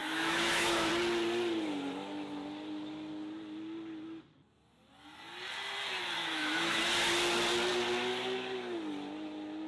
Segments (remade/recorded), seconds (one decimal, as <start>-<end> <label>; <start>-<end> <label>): 0.0-0.9 remade; 0.9-6.2 recorded; 6.2-6.8 remade; 6.8-9.7 recorded